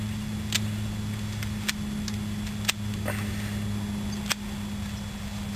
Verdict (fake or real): real